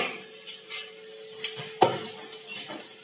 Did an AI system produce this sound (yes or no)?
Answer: no